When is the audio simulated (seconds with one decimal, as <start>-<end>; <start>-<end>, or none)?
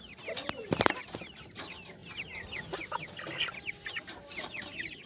none